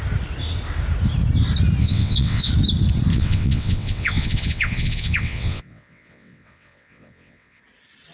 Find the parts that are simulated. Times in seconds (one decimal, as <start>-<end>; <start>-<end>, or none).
1.8-2.5; 3.1-7.6